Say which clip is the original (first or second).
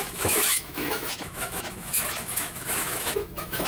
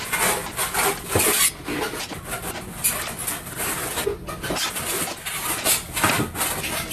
second